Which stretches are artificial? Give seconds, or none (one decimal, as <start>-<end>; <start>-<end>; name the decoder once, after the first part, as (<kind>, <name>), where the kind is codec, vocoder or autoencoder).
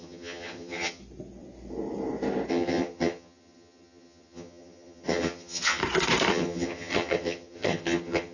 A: 0.0-1.0 (vocoder, HiFi-GAN); 2.5-5.8; 6.3-8.3